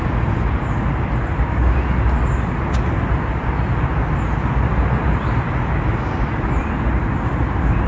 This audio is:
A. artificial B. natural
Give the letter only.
B